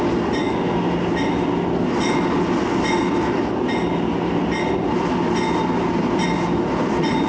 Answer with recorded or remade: recorded